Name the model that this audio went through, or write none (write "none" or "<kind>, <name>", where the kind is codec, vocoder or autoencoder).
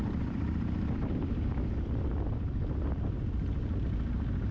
vocoder, BigVGAN v2